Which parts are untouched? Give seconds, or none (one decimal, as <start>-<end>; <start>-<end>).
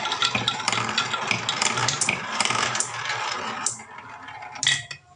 0.0-1.8; 2.8-5.2